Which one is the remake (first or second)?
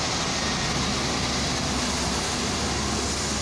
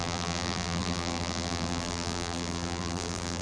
second